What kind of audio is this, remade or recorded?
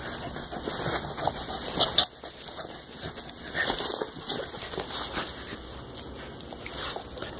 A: recorded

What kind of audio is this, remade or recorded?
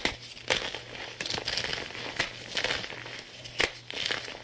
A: recorded